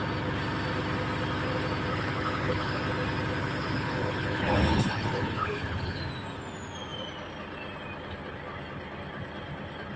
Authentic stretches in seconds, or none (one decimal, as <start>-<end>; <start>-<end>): 0.0-1.9; 2.8-3.4; 6.0-10.0